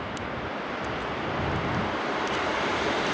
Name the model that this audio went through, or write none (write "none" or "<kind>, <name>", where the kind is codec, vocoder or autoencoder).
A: none